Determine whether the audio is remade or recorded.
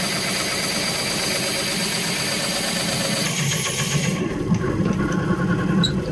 recorded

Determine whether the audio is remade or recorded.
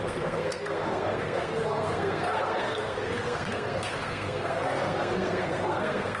remade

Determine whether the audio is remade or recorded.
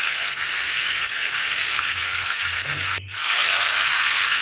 remade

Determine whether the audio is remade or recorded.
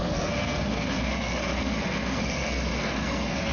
remade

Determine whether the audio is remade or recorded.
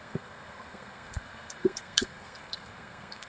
remade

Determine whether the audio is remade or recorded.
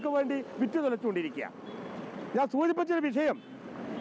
recorded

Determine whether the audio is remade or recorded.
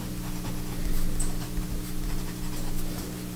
recorded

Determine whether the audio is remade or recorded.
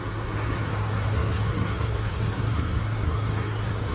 remade